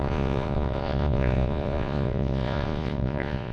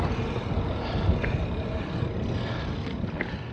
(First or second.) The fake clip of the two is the first